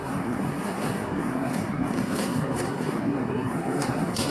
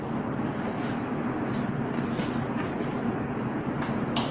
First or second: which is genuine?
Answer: second